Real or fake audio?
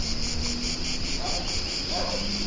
real